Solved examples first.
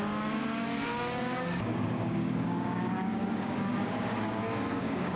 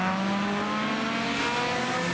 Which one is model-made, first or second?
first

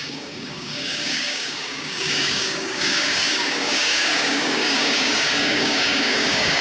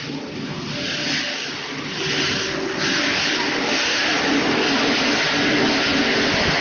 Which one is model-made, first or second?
first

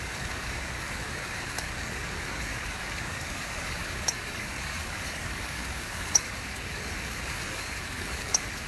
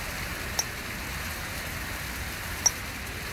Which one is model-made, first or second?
first